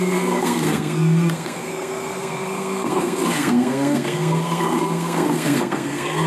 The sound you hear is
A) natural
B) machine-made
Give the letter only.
B